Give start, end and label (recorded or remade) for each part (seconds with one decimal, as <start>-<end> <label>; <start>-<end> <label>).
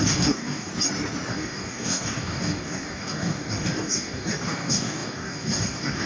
0.0-0.7 remade; 0.7-1.3 recorded; 1.3-6.1 remade